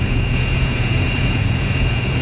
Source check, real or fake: fake